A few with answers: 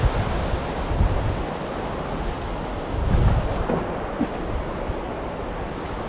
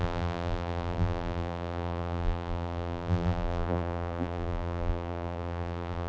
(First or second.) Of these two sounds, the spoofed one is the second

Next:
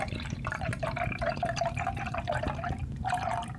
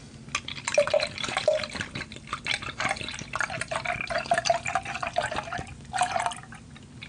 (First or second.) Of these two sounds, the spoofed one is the first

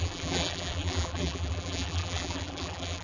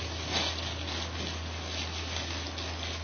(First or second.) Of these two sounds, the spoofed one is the first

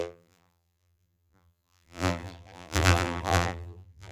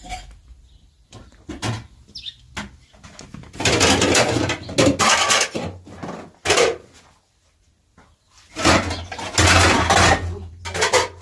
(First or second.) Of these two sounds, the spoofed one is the first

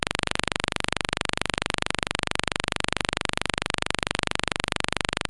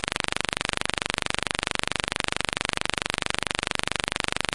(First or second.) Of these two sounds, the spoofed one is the first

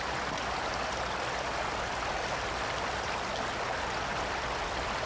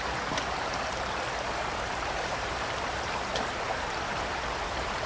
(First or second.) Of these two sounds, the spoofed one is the second